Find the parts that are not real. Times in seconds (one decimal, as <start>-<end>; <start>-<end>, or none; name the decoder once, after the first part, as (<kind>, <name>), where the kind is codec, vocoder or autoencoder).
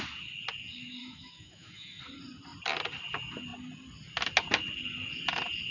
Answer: 1.0-2.0 (autoencoder, DAC-VAE)